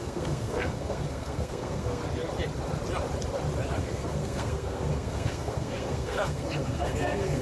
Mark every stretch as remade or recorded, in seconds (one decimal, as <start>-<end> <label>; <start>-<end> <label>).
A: 0.0-2.0 remade; 2.0-3.8 recorded; 3.8-7.4 remade